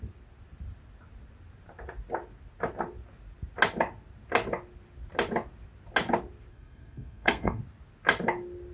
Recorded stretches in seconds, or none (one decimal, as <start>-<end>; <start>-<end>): 0.0-6.5; 7.6-8.7